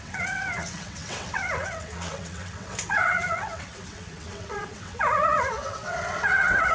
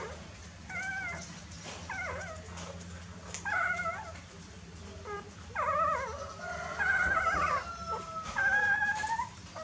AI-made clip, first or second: first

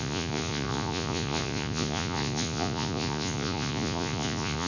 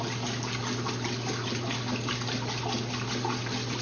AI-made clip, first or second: first